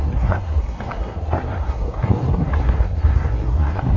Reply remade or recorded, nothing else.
remade